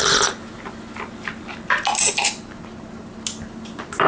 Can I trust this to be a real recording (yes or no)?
yes